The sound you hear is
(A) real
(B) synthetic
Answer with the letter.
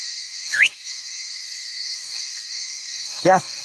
B